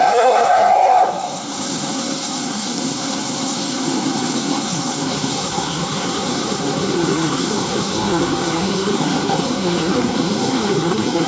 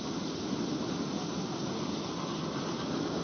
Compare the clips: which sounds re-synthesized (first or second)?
first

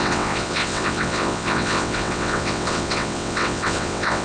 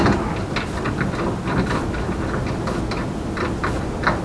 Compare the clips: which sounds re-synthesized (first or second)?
first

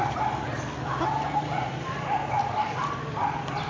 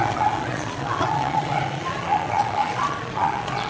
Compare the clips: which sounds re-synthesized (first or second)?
second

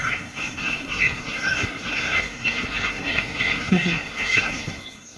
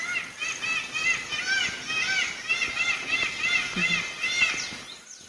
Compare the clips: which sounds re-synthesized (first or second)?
first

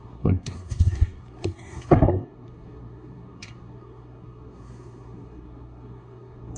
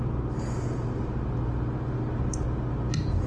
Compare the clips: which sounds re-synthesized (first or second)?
first